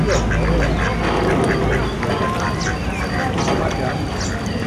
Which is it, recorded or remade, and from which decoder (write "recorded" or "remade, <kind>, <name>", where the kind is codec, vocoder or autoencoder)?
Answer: recorded